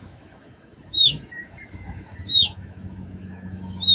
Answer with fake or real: fake